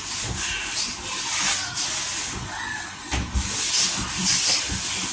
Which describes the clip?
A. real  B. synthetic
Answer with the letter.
A